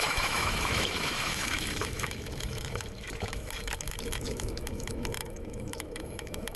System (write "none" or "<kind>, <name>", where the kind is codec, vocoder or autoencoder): autoencoder, DAC-VAE